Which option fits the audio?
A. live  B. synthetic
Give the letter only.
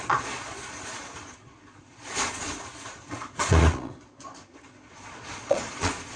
B